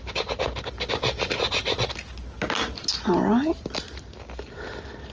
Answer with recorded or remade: recorded